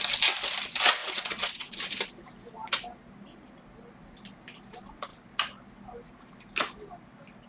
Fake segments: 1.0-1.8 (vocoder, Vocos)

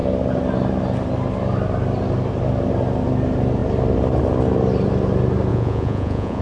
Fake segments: 5.5-6.4 (vocoder, Vocos)

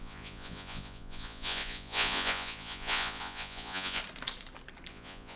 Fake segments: 0.0-4.0 (vocoder, Vocos); 4.9-5.4

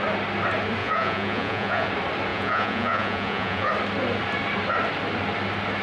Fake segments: 0.8-1.9 (vocoder, Vocos); 2.3-3.7

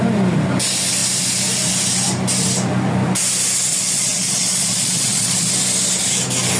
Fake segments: 3.7-5.5 (vocoder, Vocos)

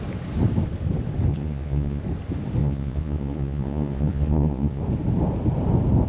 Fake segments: 1.3-2.0 (vocoder, Vocos); 2.6-4.8